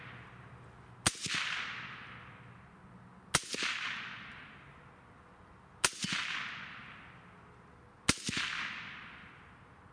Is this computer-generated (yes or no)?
no